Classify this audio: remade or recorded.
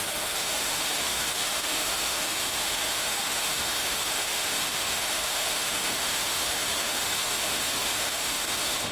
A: remade